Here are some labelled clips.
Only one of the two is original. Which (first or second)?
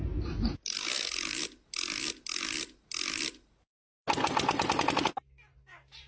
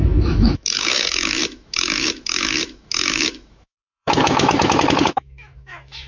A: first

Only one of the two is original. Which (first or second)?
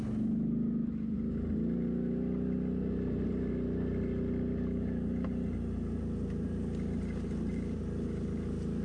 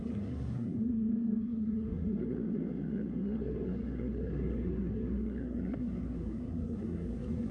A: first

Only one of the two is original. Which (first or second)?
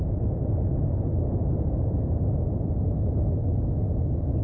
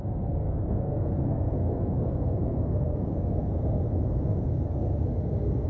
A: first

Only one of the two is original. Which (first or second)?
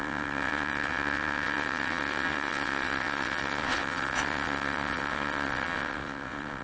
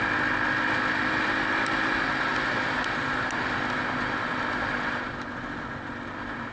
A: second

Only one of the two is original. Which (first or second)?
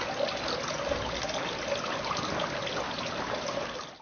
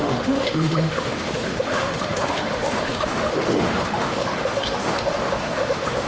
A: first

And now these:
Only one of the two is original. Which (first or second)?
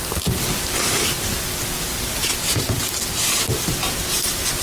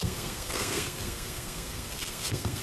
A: first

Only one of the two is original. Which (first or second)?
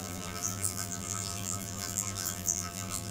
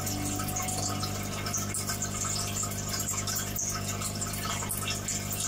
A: second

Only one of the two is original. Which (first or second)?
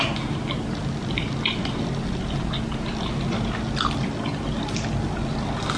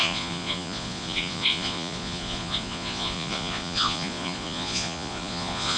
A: first